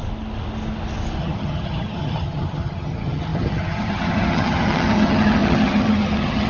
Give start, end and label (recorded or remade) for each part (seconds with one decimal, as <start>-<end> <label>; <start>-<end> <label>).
0.0-1.2 recorded; 1.2-6.5 remade